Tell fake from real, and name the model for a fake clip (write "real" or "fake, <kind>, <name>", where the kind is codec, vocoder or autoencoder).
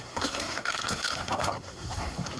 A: fake, codec, SNAC